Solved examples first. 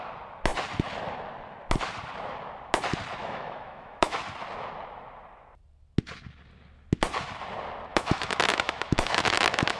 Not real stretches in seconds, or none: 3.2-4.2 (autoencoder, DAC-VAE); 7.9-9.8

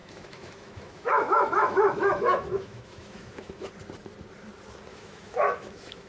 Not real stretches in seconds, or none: 0.0-3.7 (autoencoder, DAC-VAE); 4.9-6.1

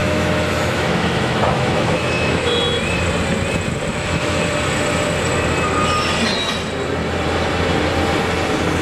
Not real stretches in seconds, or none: 0.0-2.6 (autoencoder, DAC-VAE); 3.9-4.4

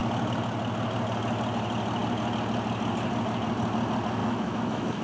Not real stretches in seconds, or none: 4.2-5.0 (autoencoder, DAC-VAE)

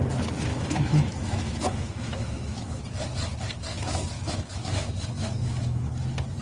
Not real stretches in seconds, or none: 0.5-2.8 (autoencoder, DAC-VAE); 3.7-5.9

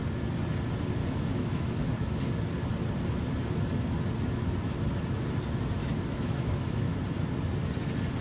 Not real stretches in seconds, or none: 1.0-2.2 (autoencoder, DAC-VAE); 5.8-7.0